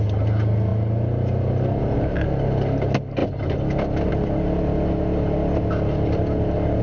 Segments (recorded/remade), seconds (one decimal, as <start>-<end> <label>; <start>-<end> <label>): 0.0-6.8 recorded